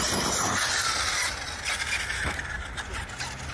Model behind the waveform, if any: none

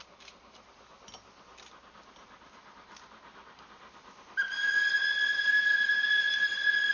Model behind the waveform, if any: none